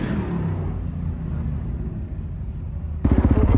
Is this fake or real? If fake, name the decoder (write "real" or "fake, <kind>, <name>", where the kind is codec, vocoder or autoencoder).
real